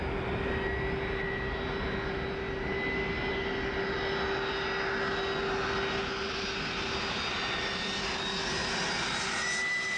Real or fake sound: real